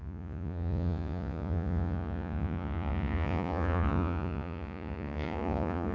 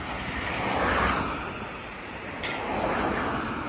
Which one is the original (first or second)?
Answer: second